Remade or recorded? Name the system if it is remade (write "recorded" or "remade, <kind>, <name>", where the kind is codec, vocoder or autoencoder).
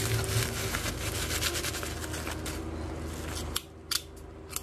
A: recorded